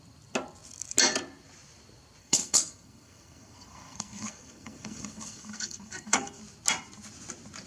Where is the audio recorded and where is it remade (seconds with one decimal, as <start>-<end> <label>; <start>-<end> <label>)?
0.0-2.2 recorded; 2.2-6.4 remade; 6.4-7.7 recorded